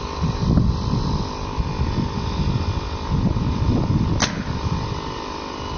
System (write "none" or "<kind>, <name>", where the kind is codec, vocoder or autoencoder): none